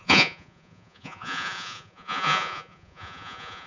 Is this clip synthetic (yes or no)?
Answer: yes